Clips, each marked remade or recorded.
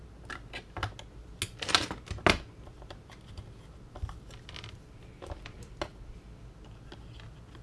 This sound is recorded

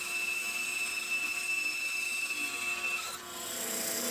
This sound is recorded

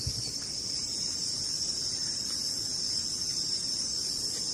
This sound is recorded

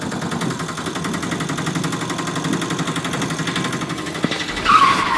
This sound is recorded